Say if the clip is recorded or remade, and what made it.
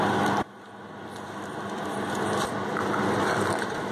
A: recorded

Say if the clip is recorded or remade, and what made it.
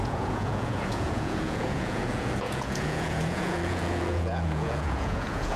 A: remade, vocoder, Vocos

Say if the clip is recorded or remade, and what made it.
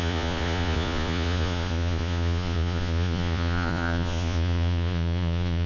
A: remade, vocoder, Vocos